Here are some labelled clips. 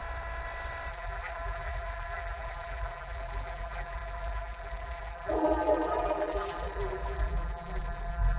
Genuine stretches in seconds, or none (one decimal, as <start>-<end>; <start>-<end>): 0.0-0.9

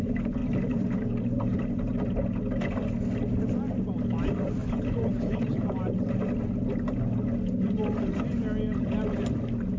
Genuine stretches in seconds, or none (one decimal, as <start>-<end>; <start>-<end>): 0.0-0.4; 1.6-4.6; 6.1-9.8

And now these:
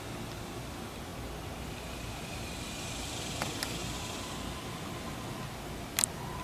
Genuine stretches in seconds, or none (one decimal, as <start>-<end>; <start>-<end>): 0.0-1.1; 4.6-6.4

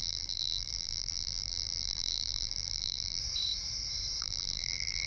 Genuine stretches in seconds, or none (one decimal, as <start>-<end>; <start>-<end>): 3.2-4.2

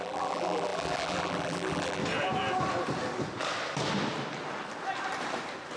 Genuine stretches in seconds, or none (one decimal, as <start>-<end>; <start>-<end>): 2.0-5.8

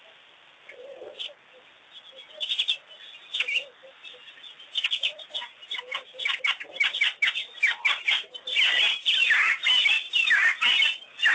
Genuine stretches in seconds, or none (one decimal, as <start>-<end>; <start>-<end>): 0.0-7.6; 8.1-9.2; 10.5-11.3